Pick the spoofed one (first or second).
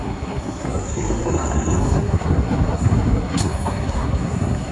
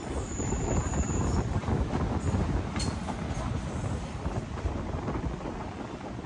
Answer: first